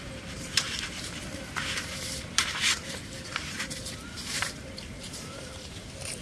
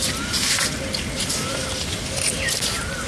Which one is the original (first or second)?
second